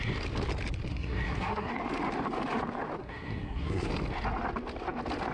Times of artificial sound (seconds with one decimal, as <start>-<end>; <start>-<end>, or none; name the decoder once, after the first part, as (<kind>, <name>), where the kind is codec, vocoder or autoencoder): 0.9-1.7 (codec, SNAC); 3.0-3.9